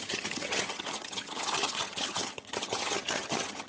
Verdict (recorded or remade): remade